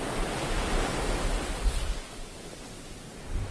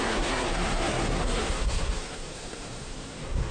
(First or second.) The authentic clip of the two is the first